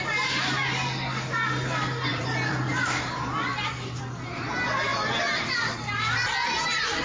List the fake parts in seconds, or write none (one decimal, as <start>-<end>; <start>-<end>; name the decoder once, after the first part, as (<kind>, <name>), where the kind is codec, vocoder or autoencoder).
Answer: 2.1-4.0 (vocoder, BigVGAN v2); 4.9-5.7